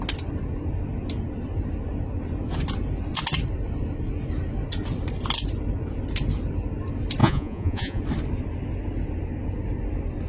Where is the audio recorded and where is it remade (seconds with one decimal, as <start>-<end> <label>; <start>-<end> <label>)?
0.0-7.2 recorded; 7.2-8.0 remade; 8.0-10.3 recorded